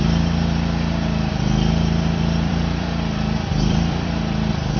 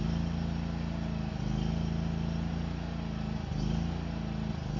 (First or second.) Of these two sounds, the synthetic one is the first